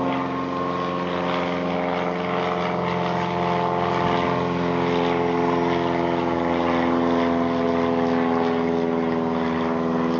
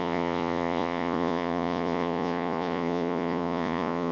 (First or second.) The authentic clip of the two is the first